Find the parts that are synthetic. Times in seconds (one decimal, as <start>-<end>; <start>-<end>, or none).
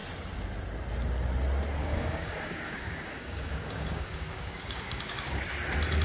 1.8-5.4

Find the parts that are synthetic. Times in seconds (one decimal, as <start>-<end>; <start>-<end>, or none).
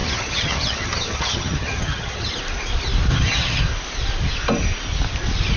0.0-2.3; 3.1-3.6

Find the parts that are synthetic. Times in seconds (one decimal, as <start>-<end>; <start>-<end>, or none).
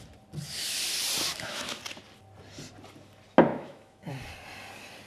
1.3-1.8; 3.5-4.1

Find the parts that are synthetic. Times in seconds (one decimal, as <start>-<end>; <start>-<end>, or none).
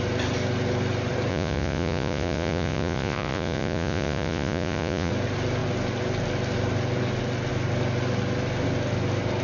1.3-5.1